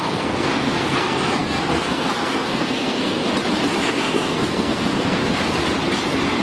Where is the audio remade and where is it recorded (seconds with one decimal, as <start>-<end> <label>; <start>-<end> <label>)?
0.0-3.2 remade; 3.2-3.9 recorded; 3.9-5.2 remade; 5.2-6.4 recorded